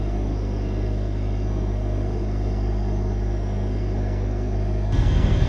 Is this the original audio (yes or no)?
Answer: no